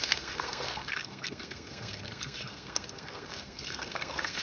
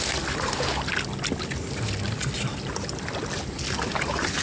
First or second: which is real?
second